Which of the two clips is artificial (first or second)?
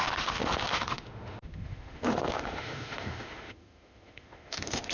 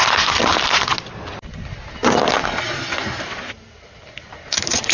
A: first